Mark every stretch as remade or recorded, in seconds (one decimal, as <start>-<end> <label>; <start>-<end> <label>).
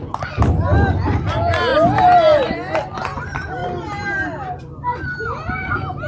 0.0-6.1 recorded